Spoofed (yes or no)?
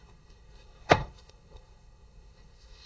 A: yes